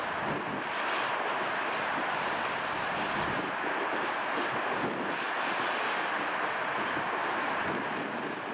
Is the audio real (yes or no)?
yes